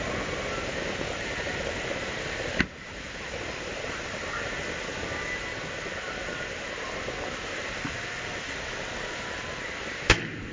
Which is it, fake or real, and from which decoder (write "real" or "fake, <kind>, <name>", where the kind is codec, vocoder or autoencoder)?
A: real